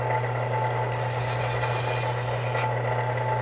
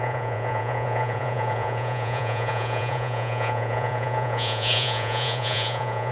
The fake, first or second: second